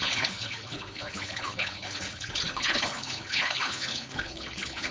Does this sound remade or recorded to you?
remade